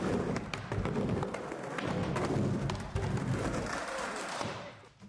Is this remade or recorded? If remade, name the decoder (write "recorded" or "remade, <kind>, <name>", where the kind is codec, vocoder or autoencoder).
recorded